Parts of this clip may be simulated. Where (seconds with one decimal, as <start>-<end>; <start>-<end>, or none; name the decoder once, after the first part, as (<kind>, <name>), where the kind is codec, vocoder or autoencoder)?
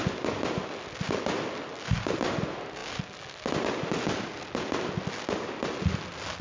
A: none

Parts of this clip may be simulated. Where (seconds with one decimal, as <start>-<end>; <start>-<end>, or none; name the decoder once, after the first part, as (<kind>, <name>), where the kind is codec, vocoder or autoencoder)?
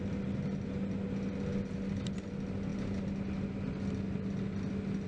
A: none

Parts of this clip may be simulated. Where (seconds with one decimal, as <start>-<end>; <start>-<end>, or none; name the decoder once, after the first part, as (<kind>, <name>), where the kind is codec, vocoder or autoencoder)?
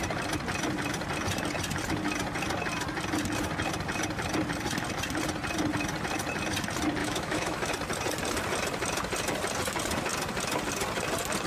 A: 7.0-7.7 (autoencoder, DAC-VAE)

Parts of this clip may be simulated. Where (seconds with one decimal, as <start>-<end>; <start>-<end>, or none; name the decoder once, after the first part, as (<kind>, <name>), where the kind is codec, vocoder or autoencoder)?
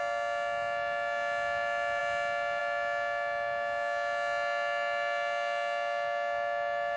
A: none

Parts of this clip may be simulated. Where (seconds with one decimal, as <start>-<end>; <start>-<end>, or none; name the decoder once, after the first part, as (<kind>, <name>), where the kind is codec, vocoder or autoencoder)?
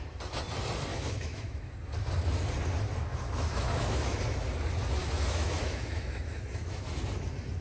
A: 0.9-1.7 (autoencoder, DAC-VAE); 3.1-4.2; 5.0-7.0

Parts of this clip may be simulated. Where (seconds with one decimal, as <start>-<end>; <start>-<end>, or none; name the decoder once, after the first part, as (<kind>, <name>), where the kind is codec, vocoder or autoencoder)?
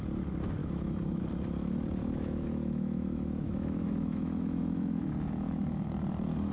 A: 0.6-1.2 (autoencoder, DAC-VAE); 2.0-5.9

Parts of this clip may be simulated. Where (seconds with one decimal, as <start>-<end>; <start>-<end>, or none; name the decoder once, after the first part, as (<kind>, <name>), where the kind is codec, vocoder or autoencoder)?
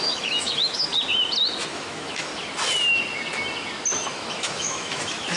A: 0.0-0.9 (autoencoder, DAC-VAE); 1.7-2.3; 4.1-5.4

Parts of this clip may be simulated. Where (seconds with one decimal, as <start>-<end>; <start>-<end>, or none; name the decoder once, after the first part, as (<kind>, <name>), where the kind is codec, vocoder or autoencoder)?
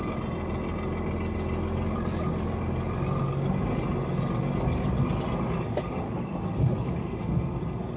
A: 7.0-7.6 (autoencoder, DAC-VAE)